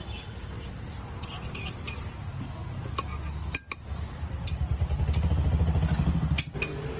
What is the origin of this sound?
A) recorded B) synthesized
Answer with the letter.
A